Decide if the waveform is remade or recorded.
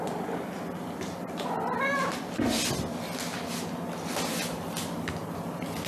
recorded